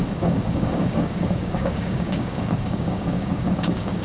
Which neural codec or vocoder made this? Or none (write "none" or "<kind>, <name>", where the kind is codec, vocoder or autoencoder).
codec, DAC